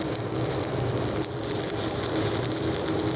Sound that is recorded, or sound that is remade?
remade